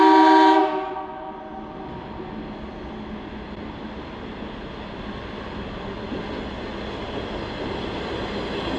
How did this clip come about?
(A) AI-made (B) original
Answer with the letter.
B